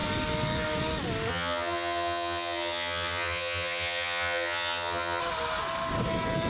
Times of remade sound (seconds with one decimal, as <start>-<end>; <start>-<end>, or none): 1.3-5.2